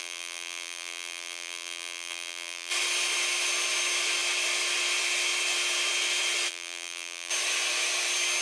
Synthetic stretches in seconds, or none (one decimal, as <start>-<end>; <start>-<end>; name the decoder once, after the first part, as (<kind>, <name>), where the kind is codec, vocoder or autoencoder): 0.0-2.7 (vocoder, BigVGAN v2); 6.5-7.3